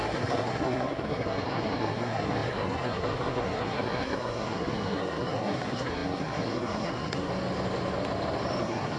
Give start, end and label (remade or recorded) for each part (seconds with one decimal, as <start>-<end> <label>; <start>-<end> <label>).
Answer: 0.0-7.3 remade; 7.3-8.6 recorded; 8.6-9.0 remade